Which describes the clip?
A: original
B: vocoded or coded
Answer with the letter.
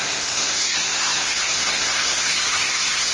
B